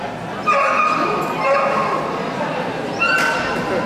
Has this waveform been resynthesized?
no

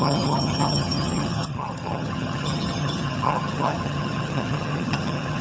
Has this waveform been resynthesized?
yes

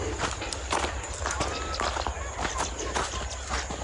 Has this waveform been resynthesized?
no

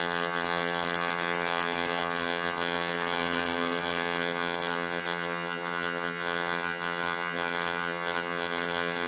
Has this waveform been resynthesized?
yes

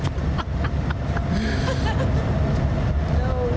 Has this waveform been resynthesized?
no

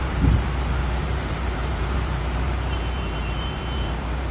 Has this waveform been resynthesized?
yes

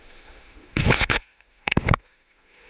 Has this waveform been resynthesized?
yes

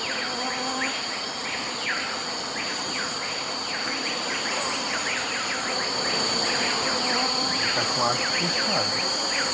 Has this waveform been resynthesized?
no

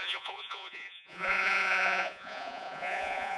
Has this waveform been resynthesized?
yes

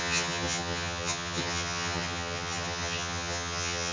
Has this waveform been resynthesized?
yes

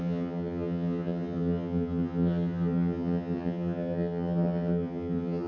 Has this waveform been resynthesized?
yes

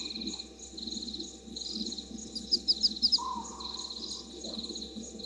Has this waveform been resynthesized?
no